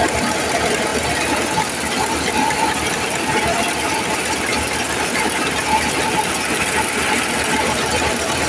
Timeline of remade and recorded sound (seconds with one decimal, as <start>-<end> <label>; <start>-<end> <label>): 0.0-8.5 recorded